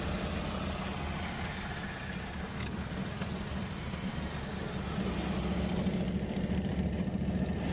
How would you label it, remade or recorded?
recorded